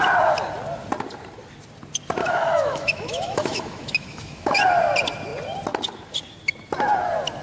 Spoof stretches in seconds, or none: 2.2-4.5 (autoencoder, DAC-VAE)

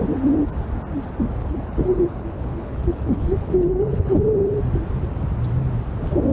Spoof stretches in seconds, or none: 1.4-4.2 (codec, HILCodec)

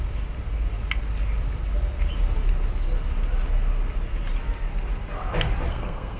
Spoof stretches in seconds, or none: 5.7-6.2 (codec, SNAC)

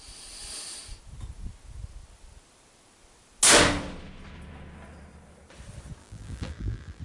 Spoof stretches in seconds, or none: 6.0-7.0 (vocoder, BigVGAN v2)

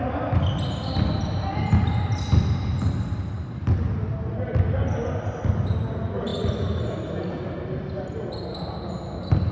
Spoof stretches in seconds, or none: none

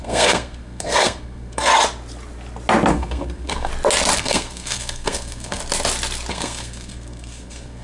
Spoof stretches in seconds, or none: 0.0-1.7 (codec, SNAC); 2.9-3.7; 4.2-5.6; 6.3-7.8